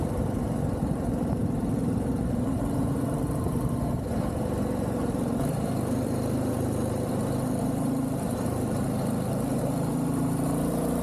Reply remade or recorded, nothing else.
remade